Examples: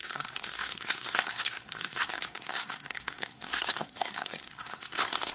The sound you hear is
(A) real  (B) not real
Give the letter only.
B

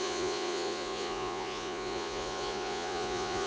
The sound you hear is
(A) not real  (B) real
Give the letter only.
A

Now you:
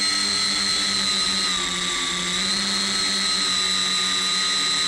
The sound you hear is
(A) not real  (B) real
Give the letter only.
B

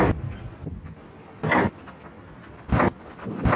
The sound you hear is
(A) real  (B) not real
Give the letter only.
A